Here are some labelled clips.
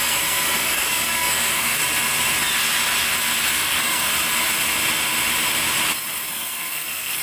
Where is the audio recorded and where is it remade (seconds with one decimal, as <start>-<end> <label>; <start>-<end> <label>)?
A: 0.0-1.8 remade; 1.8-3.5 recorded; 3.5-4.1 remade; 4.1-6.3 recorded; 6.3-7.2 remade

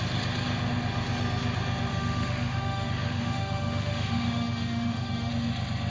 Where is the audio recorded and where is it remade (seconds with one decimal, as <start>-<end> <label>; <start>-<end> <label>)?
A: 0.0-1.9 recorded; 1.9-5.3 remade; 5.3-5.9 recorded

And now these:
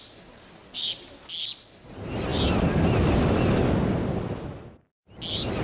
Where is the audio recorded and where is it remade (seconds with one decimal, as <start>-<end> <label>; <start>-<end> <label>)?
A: 0.0-5.6 recorded

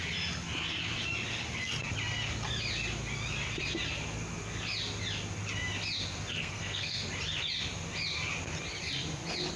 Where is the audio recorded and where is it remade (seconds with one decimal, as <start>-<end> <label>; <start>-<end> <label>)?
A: 0.0-6.3 recorded; 6.3-7.1 remade; 7.1-9.6 recorded

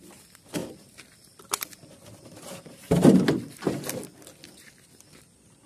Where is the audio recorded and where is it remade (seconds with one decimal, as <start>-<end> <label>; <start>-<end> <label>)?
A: 0.0-5.7 recorded

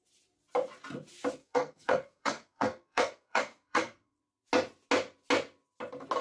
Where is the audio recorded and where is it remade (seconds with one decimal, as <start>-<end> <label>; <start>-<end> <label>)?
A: 0.0-1.4 recorded; 1.4-4.2 remade; 4.2-6.2 recorded